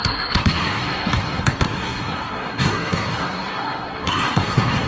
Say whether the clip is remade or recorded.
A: remade